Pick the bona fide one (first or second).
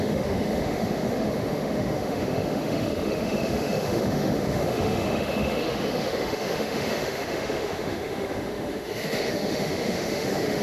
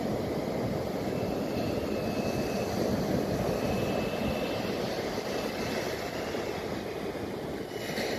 second